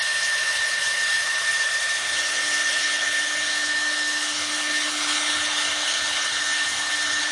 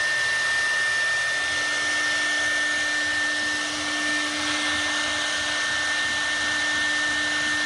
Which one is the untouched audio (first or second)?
second